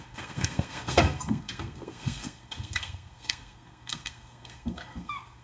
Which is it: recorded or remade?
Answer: remade